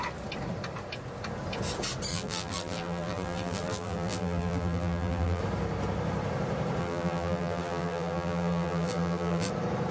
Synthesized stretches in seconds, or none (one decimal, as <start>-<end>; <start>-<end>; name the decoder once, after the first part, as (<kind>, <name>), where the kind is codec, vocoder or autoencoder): 2.1-5.4 (vocoder, BigVGAN v2); 6.8-9.5